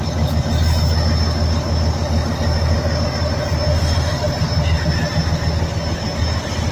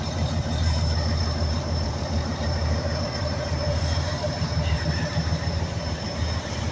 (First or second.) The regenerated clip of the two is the second